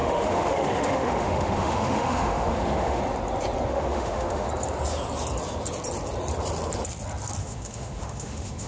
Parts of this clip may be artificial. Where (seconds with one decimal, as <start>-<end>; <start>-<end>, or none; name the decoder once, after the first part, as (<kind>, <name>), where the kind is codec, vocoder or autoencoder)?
0.0-3.0 (autoencoder, DAC-VAE); 3.7-4.5; 7.4-8.7